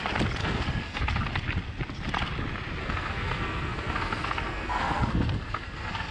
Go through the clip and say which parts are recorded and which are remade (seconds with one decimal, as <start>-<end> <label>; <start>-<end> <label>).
0.0-0.4 recorded; 0.4-1.0 remade; 1.0-2.8 recorded; 2.8-6.1 remade